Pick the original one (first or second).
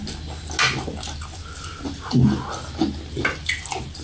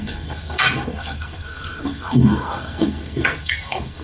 first